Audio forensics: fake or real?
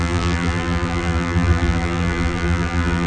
fake